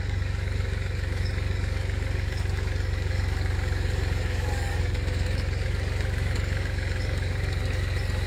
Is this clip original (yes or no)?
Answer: no